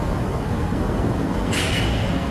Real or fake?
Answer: fake